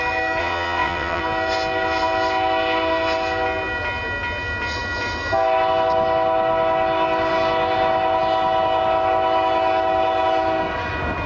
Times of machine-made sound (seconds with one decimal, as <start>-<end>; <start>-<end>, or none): 0.4-1.2

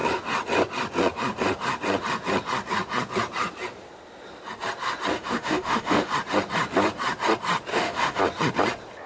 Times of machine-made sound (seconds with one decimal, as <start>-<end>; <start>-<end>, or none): 5.1-6.1; 7.7-8.2

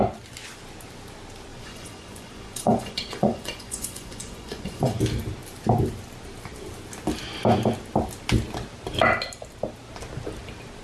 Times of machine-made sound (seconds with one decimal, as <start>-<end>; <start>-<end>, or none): 1.5-5.0

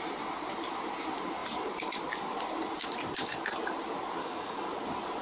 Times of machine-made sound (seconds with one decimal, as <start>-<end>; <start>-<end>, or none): 4.2-4.7